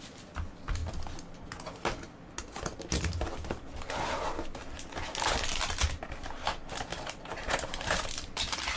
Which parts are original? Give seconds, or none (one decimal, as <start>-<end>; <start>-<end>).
0.0-6.9; 8.1-8.8